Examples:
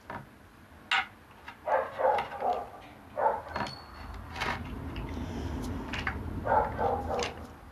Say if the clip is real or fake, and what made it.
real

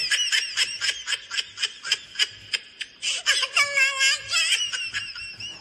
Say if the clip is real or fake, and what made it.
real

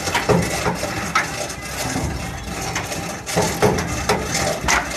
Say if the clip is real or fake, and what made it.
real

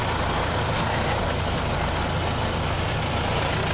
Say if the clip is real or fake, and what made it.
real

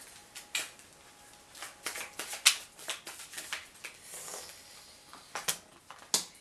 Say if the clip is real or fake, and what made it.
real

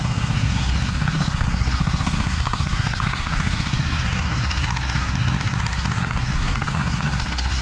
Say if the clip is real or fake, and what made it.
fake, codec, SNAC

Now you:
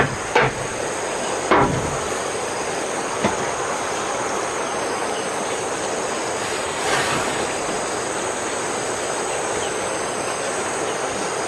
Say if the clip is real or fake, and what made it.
real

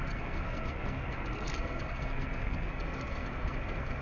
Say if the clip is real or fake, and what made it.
fake, codec, SNAC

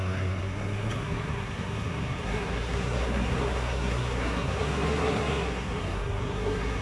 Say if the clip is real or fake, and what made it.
fake, codec, SNAC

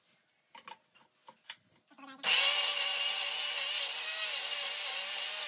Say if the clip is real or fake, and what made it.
real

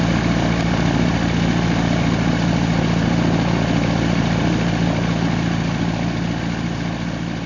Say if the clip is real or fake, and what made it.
real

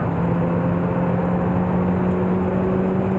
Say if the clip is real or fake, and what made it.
real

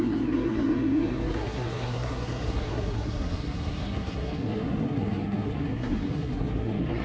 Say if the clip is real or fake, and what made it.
fake, codec, SNAC